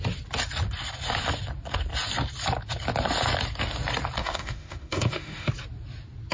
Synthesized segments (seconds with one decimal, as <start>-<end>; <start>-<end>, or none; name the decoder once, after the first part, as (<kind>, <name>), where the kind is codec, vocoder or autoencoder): 4.2-5.5 (autoencoder, DAC-VAE)